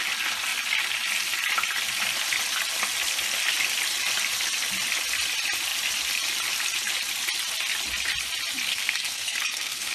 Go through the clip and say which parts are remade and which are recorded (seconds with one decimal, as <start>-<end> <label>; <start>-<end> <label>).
0.0-8.7 recorded; 8.7-9.9 remade